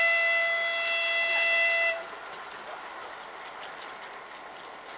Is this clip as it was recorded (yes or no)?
yes